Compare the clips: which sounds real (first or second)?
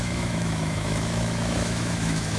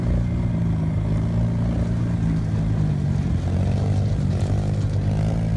second